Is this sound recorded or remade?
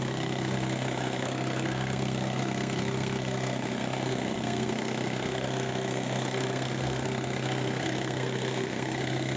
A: remade